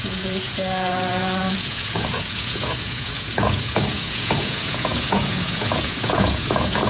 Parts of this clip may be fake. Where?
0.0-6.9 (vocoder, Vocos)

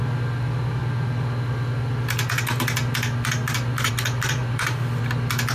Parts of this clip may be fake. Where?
none

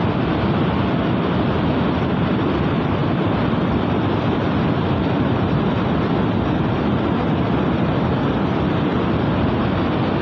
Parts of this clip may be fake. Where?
none

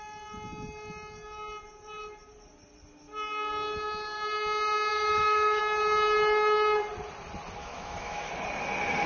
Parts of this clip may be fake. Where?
4.9-5.6 (autoencoder, DAC-VAE); 7.6-8.3